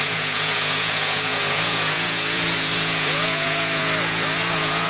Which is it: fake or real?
fake